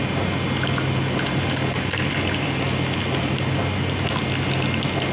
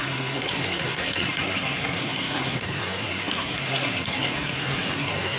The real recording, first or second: first